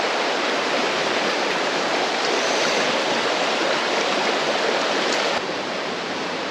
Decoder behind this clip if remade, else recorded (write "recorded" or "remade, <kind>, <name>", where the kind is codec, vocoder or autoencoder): remade, vocoder, BigVGAN v2